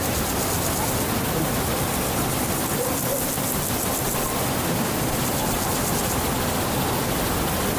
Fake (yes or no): no